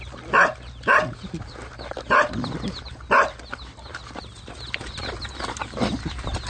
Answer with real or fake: real